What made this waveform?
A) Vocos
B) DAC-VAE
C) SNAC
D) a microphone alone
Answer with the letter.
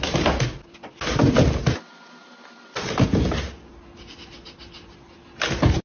D